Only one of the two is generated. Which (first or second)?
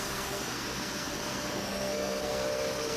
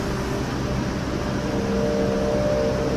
first